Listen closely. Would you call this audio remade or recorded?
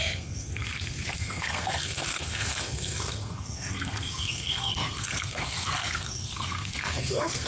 remade